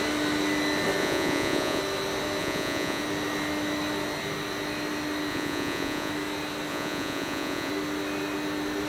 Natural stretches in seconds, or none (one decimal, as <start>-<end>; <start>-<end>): 0.0-1.0; 1.8-2.4; 3.0-5.3; 6.1-6.7; 7.7-8.9

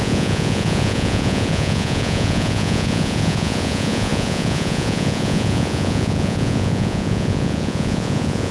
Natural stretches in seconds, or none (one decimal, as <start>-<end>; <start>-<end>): none

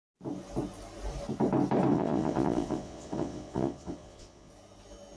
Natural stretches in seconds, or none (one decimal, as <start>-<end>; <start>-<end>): 0.0-1.9; 4.5-5.2

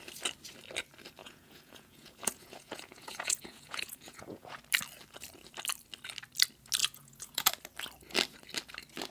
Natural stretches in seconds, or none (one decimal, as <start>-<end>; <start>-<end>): 0.0-1.2; 4.6-6.8; 7.5-9.1